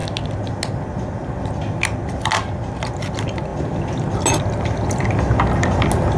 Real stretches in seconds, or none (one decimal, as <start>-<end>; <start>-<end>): 0.0-6.2